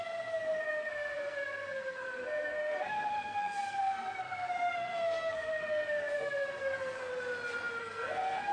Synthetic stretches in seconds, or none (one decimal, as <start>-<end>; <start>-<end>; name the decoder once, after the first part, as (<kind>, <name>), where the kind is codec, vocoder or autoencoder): 0.0-7.1 (codec, SNAC); 7.8-8.5